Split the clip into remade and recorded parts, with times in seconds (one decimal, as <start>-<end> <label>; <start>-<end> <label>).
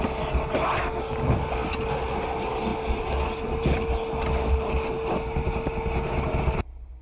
0.0-7.0 recorded